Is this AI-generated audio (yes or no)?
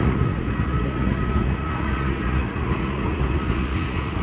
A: yes